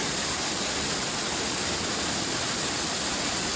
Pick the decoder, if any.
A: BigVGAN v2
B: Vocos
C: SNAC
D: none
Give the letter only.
D